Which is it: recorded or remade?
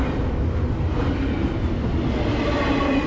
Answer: recorded